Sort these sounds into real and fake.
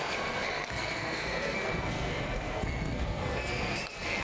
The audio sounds fake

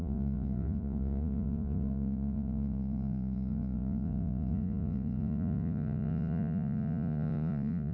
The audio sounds fake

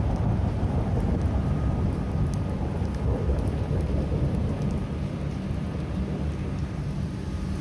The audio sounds real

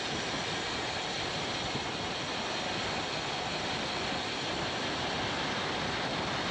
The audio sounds real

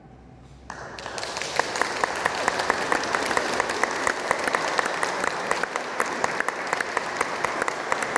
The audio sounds real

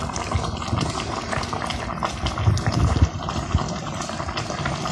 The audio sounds fake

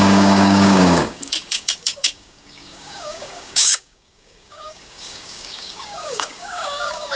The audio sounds fake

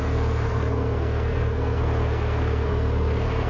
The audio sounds fake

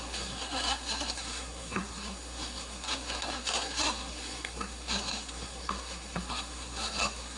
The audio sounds fake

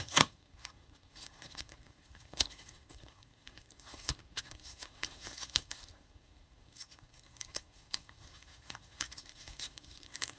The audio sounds fake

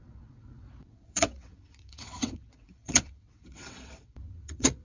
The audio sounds fake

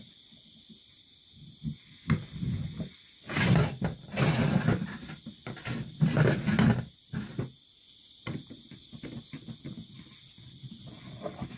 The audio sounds real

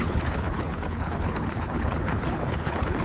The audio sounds fake